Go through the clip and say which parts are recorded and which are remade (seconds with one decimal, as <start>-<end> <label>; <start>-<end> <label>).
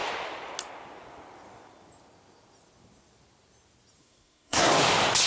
0.0-4.0 recorded; 4.0-4.7 remade; 4.7-5.3 recorded